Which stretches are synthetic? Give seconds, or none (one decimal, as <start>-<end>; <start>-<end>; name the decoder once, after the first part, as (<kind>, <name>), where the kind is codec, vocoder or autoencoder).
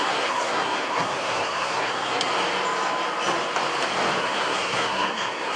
0.0-2.3 (codec, SNAC); 4.2-5.6